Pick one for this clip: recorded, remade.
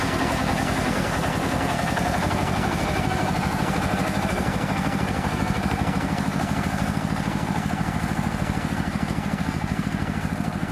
remade